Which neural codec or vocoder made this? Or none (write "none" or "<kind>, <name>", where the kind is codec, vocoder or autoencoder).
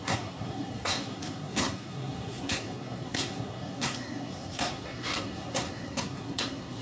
codec, SNAC